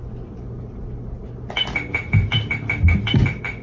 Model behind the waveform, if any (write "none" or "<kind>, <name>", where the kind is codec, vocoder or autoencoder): none